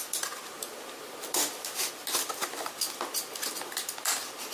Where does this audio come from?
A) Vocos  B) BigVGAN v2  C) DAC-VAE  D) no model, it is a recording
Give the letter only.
D